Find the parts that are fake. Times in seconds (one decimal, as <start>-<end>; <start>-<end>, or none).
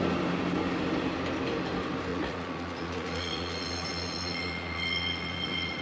2.1-5.8